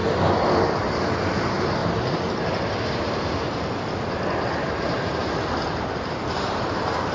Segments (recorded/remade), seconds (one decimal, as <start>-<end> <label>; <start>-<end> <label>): 0.0-0.5 remade; 0.5-1.8 recorded; 1.8-5.3 remade; 5.3-7.1 recorded